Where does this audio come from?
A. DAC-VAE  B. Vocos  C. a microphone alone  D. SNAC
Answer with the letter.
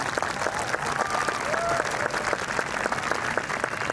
C